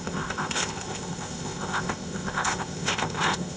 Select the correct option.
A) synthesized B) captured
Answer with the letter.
A